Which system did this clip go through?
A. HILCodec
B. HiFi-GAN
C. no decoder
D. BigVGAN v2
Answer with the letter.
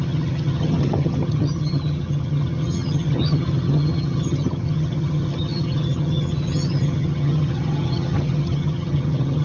B